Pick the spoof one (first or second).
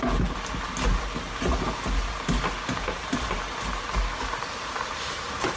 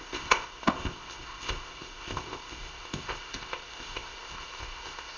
second